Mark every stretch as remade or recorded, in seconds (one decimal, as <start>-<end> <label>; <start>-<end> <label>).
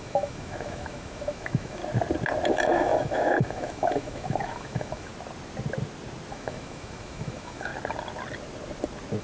0.0-1.8 remade; 1.8-2.5 recorded; 2.5-5.1 remade; 5.1-6.3 recorded; 6.3-7.7 remade; 7.7-9.2 recorded